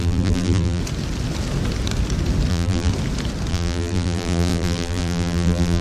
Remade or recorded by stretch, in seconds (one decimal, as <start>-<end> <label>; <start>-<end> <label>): 0.0-0.8 remade; 0.8-2.5 recorded; 2.5-2.9 remade; 2.9-3.5 recorded; 3.5-5.8 remade